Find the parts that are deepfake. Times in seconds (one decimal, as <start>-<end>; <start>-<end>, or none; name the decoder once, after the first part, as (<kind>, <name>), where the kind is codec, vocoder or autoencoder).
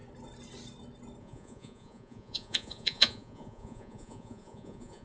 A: 1.2-5.0 (vocoder, Vocos)